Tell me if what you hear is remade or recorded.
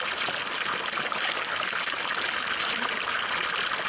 recorded